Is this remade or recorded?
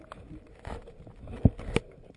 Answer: recorded